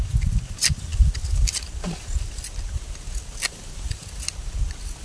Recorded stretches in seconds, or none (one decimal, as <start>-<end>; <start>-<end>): 0.0-5.0